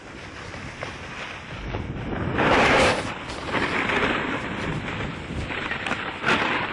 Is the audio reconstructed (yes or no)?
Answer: no